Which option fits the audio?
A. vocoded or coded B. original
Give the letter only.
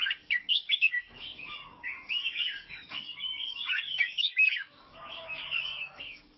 A